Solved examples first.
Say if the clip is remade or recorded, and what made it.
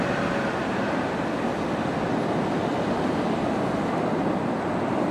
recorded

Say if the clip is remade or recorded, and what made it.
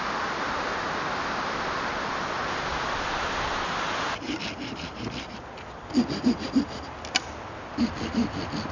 recorded